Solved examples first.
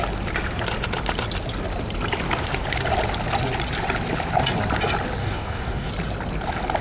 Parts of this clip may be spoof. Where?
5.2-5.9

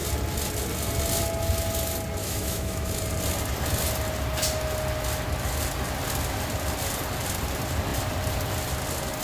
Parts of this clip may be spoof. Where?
2.2-2.9

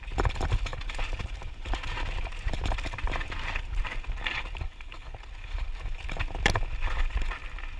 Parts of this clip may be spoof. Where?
0.7-3.8

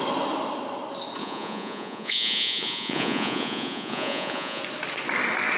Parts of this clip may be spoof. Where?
1.2-4.6

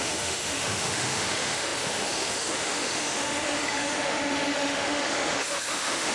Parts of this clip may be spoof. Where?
0.0-6.1

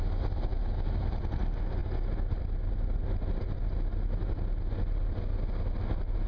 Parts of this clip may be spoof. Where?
none